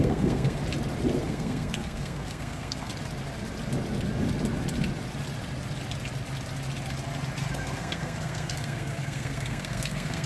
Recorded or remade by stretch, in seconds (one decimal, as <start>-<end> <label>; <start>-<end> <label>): 0.0-0.6 remade; 0.6-1.2 recorded; 1.2-2.9 remade; 2.9-7.5 recorded; 7.5-10.3 remade